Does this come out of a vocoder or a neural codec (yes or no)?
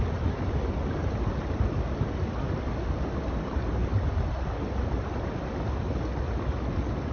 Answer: no